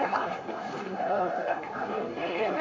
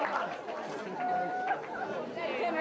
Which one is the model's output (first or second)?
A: first